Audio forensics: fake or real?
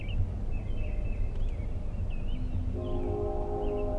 real